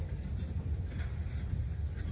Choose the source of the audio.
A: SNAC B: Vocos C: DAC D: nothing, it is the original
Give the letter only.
D